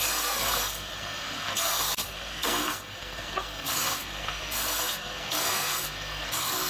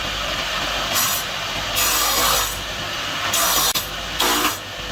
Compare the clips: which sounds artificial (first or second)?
first